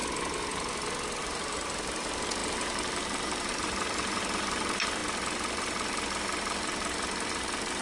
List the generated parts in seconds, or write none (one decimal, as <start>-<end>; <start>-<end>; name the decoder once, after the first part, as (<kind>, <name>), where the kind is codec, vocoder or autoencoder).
1.2-5.0 (vocoder, BigVGAN v2); 7.3-7.8

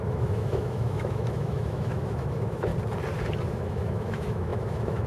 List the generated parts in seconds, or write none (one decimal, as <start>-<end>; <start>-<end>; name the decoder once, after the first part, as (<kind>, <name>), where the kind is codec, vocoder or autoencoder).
0.0-2.7 (autoencoder, DAC-VAE); 3.4-5.1

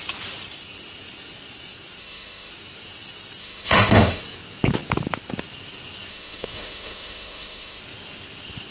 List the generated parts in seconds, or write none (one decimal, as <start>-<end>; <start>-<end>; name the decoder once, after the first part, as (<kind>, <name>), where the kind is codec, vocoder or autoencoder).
2.0-2.5 (autoencoder, DAC-VAE); 3.4-4.2; 6.1-7.8